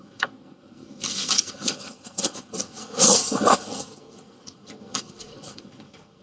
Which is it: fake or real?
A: fake